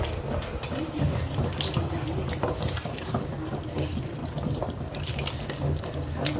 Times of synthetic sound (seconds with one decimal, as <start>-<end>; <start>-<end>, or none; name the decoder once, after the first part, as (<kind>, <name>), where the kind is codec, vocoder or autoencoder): none

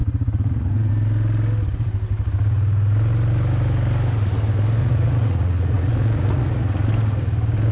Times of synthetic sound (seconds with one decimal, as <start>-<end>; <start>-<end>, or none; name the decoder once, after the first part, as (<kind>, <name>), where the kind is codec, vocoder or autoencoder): 0.0-0.9 (vocoder, Vocos); 4.8-6.9

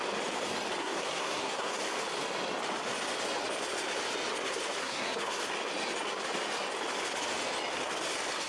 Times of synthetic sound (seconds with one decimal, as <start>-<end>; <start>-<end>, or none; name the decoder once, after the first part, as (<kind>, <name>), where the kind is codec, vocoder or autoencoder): 0.8-1.8 (codec, SNAC); 4.8-5.4